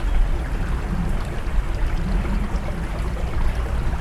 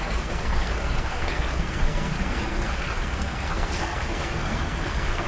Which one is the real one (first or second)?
first